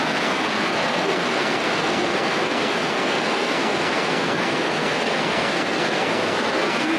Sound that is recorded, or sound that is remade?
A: remade